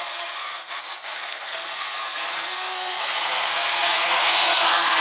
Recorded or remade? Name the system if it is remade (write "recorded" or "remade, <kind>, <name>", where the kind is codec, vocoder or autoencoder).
remade, codec, SNAC